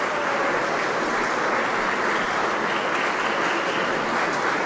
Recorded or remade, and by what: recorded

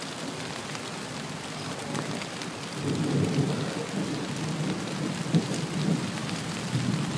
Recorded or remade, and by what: recorded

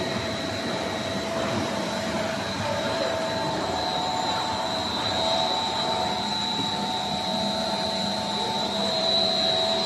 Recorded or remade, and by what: remade, vocoder, BigVGAN v2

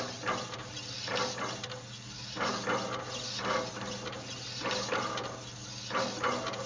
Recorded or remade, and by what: recorded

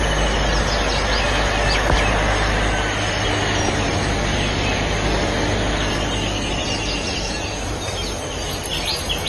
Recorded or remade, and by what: recorded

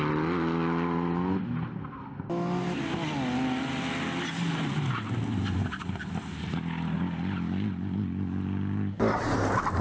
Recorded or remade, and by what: recorded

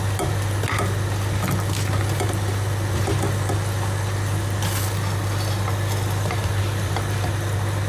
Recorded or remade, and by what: recorded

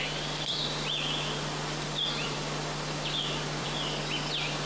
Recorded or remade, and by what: remade, vocoder, BigVGAN v2